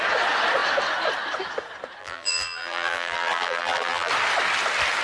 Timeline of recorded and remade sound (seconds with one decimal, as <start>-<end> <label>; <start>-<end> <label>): 0.0-2.0 recorded; 2.0-4.1 remade; 4.1-5.0 recorded